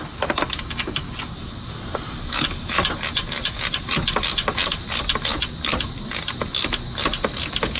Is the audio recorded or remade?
recorded